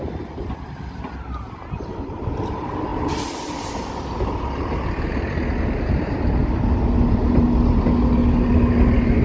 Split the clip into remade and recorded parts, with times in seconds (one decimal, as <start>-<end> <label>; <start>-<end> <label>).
0.0-9.2 recorded